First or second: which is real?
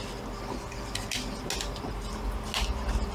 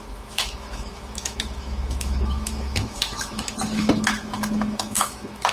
first